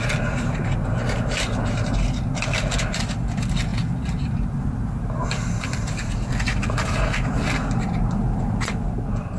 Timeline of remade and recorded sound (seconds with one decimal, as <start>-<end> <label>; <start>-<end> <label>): 0.0-9.4 recorded